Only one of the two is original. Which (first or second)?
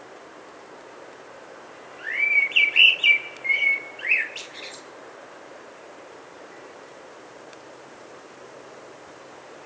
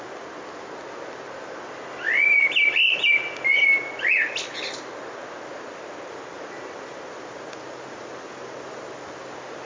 second